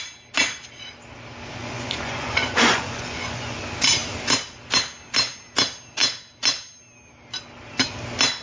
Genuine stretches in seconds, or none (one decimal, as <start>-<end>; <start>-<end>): 0.0-1.6; 3.6-8.4